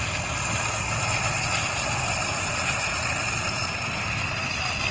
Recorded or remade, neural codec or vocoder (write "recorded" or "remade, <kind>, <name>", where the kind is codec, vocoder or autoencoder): recorded